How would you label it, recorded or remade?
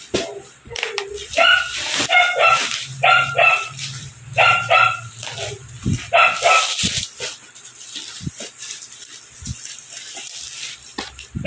remade